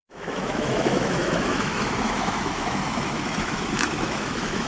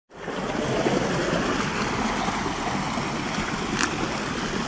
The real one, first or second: second